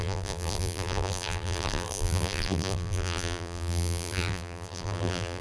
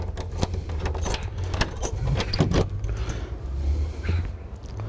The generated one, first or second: first